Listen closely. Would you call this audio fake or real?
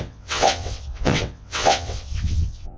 fake